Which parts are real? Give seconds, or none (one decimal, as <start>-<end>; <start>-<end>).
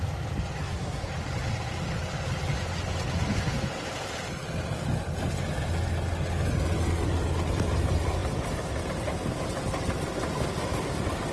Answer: 0.0-0.6; 1.1-11.3